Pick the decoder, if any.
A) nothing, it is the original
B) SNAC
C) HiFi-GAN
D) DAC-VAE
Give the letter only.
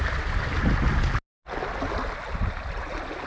A